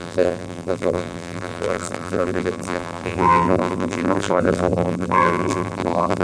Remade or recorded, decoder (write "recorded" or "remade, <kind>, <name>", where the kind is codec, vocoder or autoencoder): remade, vocoder, BigVGAN v2